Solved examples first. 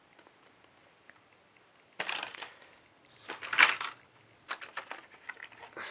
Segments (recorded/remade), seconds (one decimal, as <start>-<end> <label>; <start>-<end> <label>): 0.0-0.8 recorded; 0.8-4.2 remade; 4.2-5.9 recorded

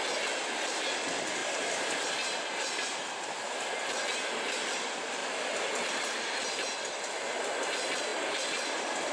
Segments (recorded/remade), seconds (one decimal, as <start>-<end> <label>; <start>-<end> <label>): 0.0-1.4 recorded; 1.4-3.3 remade; 3.3-9.1 recorded

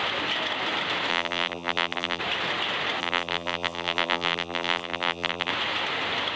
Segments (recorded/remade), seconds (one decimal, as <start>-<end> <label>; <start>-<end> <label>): 0.0-1.1 recorded; 1.1-2.2 remade; 2.2-3.0 recorded; 3.0-5.5 remade; 5.5-6.4 recorded